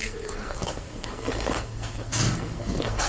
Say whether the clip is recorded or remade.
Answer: remade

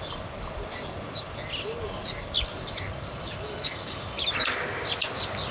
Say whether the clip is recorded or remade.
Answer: recorded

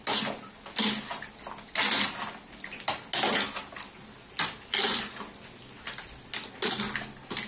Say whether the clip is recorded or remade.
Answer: recorded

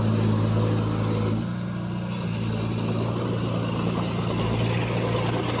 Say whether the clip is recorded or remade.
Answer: recorded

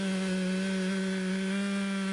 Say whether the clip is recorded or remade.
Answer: recorded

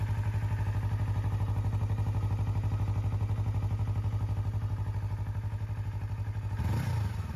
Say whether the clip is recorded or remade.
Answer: recorded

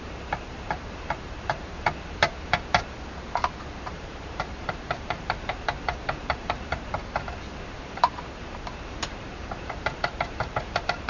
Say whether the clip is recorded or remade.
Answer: remade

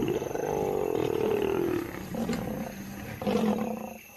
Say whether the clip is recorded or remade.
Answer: recorded